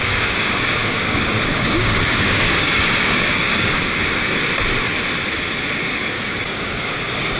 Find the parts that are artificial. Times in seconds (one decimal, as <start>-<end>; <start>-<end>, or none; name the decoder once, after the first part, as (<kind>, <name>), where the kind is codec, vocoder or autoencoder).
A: 0.0-4.4 (codec, DAC); 5.8-7.4